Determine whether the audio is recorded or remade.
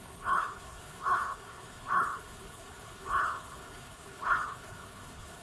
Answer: remade